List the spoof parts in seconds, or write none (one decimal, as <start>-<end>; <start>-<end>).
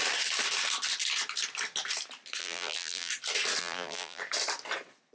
2.4-3.1; 3.6-4.2